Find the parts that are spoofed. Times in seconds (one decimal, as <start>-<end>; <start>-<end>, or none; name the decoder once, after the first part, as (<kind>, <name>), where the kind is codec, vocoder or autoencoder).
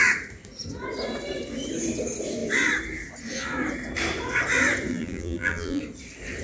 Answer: 4.9-5.8 (vocoder, BigVGAN v2)